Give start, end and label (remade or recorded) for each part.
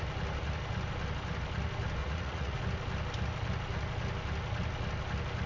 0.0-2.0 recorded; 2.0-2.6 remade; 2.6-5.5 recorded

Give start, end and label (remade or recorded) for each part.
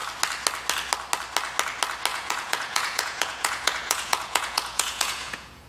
0.0-2.1 recorded; 2.1-5.7 remade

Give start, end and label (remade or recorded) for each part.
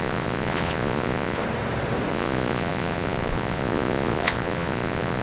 0.0-1.4 remade; 1.4-2.1 recorded; 2.1-5.2 remade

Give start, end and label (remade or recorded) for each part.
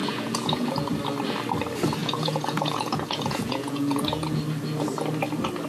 0.0-0.7 remade; 0.7-2.0 recorded; 2.0-4.4 remade; 4.4-5.7 recorded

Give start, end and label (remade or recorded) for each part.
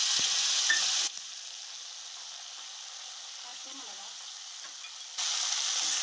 0.0-1.3 remade; 1.3-3.5 recorded; 3.5-4.2 remade; 4.2-6.0 recorded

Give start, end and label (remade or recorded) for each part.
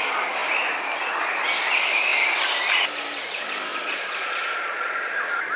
0.0-3.7 recorded; 3.7-5.1 remade; 5.1-5.6 recorded